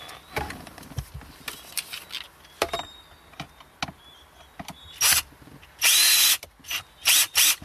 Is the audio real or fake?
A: real